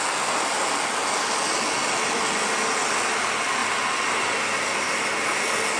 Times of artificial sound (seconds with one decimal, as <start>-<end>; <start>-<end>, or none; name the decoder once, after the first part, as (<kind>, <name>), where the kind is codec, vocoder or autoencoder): none

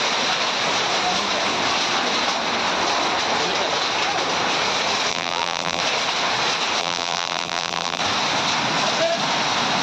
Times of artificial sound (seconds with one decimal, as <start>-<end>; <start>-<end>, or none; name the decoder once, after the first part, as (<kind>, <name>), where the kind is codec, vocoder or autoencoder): 5.1-5.8 (vocoder, BigVGAN v2); 6.8-8.0

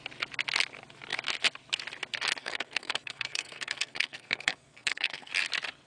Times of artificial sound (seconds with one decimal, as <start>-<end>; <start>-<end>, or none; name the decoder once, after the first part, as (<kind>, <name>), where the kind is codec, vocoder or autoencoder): 2.4-5.3 (codec, SNAC)

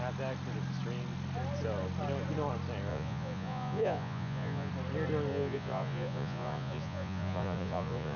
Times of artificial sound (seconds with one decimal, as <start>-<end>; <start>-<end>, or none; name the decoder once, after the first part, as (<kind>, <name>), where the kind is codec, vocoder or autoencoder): 2.9-4.7 (vocoder, Vocos); 5.3-8.2

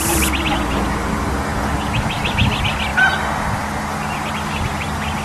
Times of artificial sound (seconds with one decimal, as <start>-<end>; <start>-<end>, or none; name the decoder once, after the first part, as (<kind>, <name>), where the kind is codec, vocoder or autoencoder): none